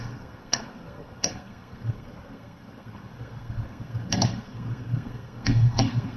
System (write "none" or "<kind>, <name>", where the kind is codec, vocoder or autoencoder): codec, SNAC